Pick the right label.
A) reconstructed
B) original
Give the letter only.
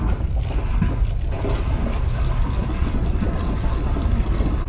B